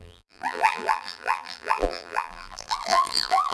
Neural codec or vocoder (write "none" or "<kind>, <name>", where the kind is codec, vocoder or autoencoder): vocoder, BigVGAN v2